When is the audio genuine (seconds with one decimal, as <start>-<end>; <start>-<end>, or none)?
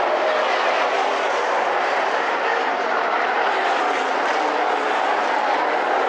0.0-6.1